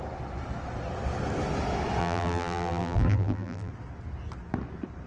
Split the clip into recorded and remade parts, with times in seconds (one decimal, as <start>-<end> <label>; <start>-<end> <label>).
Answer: 0.0-2.0 recorded; 2.0-3.7 remade; 3.7-5.1 recorded